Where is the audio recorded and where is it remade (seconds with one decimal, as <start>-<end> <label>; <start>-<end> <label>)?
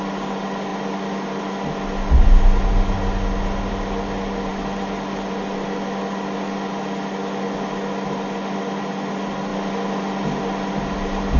0.0-11.4 recorded